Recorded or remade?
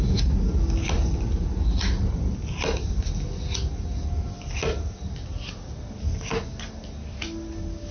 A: recorded